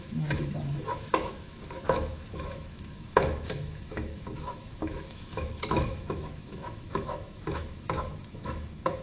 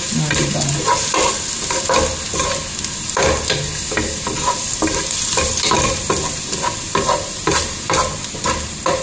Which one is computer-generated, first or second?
first